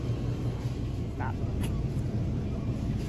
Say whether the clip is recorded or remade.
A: recorded